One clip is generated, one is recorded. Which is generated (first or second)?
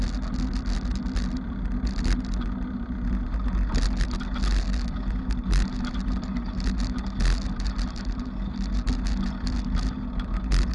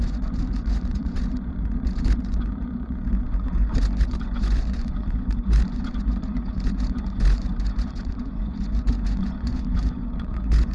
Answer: second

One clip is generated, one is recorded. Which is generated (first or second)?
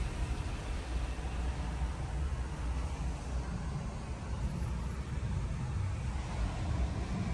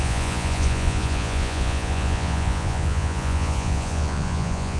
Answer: second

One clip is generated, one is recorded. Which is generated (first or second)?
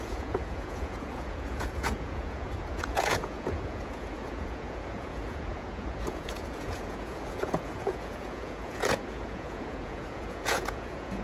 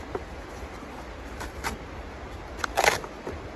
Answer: first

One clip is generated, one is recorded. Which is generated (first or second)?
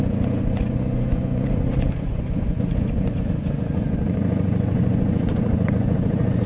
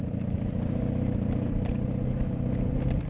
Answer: first